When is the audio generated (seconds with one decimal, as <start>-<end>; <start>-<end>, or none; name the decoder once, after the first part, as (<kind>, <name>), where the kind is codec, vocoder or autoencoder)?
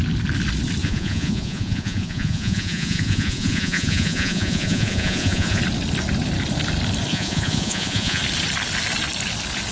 0.8-5.6 (vocoder, Vocos); 7.1-8.2